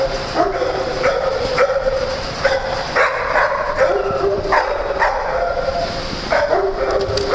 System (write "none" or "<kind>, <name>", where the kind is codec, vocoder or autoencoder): vocoder, BigVGAN v2